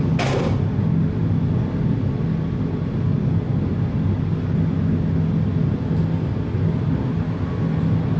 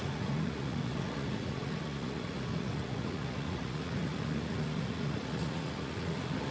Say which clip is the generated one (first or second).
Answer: second